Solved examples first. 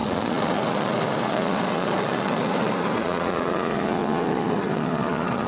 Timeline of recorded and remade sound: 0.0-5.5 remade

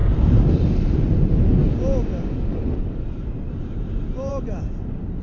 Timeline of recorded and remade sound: 0.0-5.2 recorded

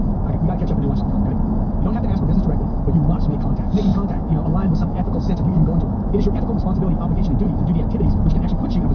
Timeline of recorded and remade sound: 0.0-3.9 recorded; 3.9-6.4 remade; 6.4-8.9 recorded

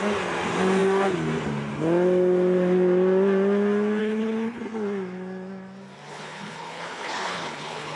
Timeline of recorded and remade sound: 0.0-4.0 recorded; 4.0-4.6 remade; 4.6-6.1 recorded; 6.1-8.0 remade

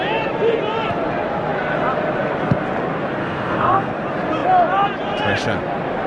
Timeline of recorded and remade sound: 0.0-3.2 recorded; 3.2-3.9 remade; 3.9-6.1 recorded

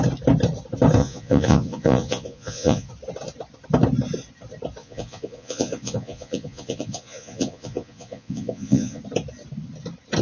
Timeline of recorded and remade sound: 0.0-1.0 recorded; 1.0-2.9 remade; 2.9-4.8 recorded; 4.8-9.0 remade; 9.0-10.2 recorded